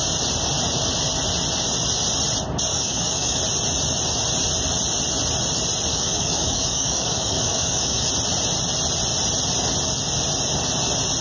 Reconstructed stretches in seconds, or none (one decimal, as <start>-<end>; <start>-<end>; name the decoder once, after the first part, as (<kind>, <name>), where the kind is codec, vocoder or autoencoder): 2.7-3.4 (codec, DAC); 5.9-8.1